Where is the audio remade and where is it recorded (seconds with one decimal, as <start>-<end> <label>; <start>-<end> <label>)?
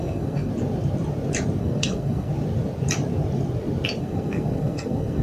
0.0-0.5 remade; 0.5-1.6 recorded; 1.6-2.3 remade; 2.3-4.0 recorded; 4.0-5.2 remade